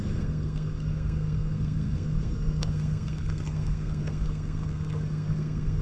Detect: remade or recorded remade